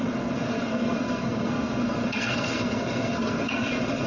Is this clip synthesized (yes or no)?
yes